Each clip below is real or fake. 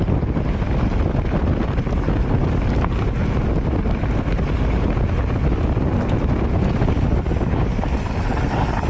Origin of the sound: real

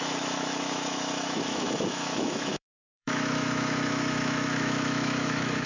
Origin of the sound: fake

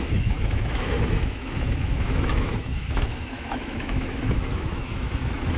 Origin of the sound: fake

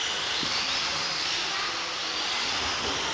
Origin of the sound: real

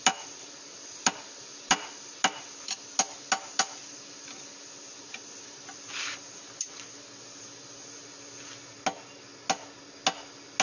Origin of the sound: real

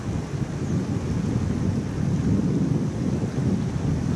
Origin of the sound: real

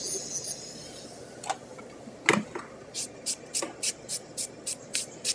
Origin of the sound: real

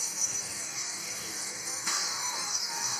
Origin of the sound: fake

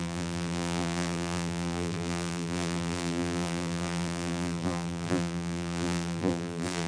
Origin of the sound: fake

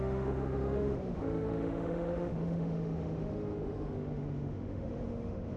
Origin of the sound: fake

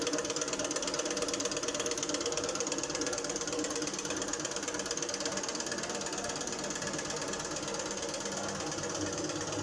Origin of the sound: real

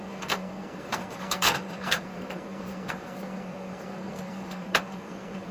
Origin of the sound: fake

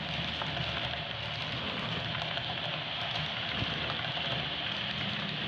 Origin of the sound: real